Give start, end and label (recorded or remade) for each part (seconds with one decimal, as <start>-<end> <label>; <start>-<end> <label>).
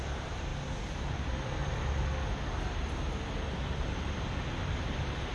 0.0-0.5 remade; 0.5-1.1 recorded; 1.1-1.6 remade; 1.6-4.8 recorded; 4.8-5.3 remade